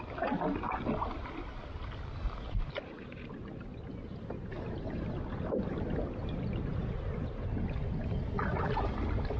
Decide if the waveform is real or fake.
real